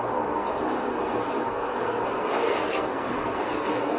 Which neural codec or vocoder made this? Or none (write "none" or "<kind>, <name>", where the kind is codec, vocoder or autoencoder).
codec, SNAC